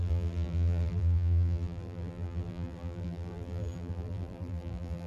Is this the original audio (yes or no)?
no